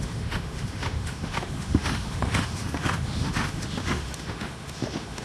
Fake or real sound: fake